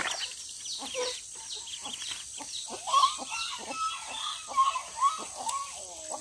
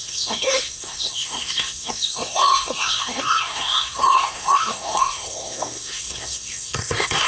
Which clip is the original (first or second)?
first